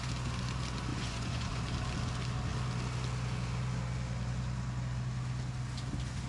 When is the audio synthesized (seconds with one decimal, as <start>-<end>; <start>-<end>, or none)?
0.9-1.6